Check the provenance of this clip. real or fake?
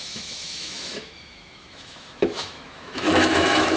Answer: fake